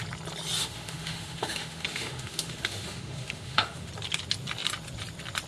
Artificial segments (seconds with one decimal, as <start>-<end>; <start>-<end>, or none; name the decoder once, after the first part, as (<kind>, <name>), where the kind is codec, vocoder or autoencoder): 0.6-3.9 (autoencoder, DAC-VAE)